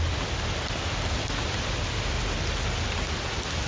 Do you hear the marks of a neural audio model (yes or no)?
no